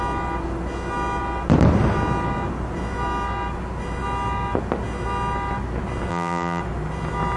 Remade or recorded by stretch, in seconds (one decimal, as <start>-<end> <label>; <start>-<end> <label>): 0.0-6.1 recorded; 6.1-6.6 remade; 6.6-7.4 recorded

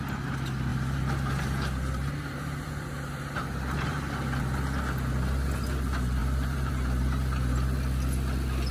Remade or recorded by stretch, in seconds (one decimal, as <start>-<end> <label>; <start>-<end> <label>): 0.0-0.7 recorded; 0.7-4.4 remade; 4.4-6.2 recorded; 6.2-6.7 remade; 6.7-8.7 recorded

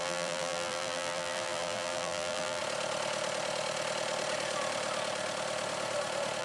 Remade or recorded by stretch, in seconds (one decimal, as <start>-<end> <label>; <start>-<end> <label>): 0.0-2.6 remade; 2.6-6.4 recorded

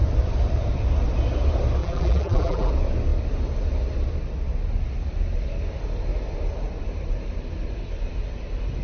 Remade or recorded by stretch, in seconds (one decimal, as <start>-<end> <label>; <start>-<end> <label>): 0.0-1.8 recorded; 1.8-2.7 remade; 2.7-8.8 recorded

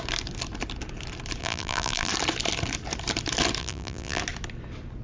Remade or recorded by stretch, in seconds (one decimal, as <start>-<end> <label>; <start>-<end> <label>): 0.0-1.4 recorded; 1.4-2.1 remade; 2.1-3.6 recorded; 3.6-4.2 remade; 4.2-5.0 recorded